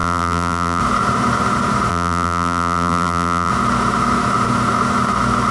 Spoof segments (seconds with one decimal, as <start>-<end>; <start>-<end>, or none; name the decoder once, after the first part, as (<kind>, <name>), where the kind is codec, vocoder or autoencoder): 0.0-0.8 (vocoder, BigVGAN v2); 1.9-3.5